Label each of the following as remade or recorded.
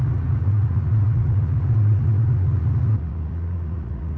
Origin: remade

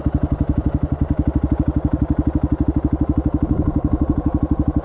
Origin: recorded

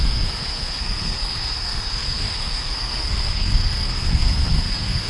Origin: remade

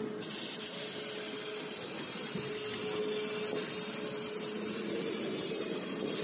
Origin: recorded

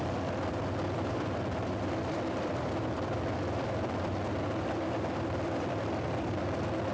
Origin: remade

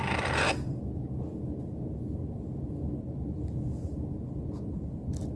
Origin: recorded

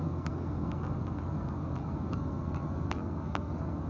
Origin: remade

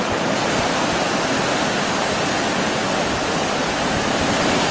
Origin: recorded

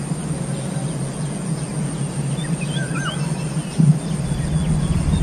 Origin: recorded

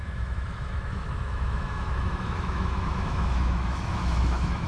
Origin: remade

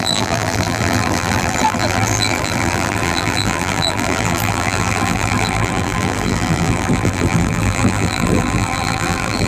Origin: remade